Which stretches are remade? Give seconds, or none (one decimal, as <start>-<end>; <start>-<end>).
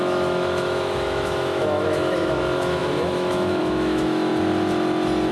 0.0-4.3